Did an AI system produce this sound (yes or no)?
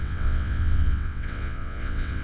yes